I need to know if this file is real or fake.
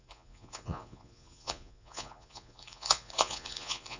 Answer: fake